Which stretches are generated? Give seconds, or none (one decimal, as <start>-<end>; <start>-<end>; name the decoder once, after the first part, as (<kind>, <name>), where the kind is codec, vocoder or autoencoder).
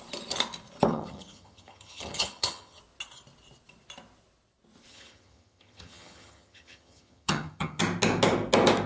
0.9-2.8 (vocoder, HiFi-GAN); 4.9-7.8